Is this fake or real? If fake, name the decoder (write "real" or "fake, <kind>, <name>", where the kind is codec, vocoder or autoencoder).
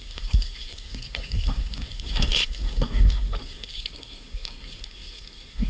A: fake, codec, SNAC